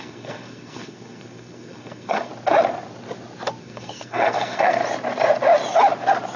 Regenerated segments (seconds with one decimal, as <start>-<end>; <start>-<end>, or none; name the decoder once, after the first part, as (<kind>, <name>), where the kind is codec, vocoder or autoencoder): 0.0-2.3 (codec, SNAC); 3.6-4.8